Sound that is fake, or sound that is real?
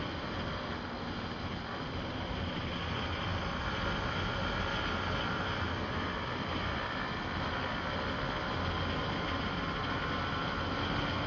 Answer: real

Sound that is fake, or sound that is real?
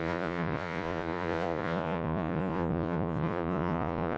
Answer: fake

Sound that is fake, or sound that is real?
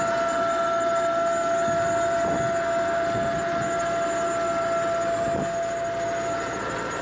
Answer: real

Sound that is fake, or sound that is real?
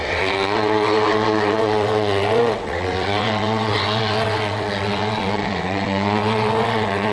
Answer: fake